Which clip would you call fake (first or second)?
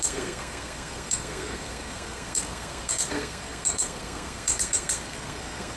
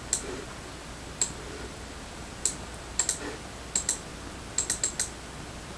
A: first